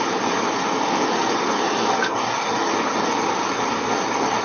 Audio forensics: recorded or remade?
recorded